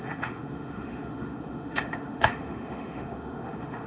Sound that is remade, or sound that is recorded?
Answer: remade